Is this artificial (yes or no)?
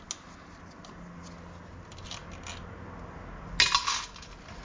no